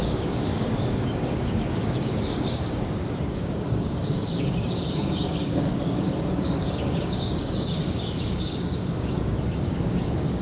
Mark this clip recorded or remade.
remade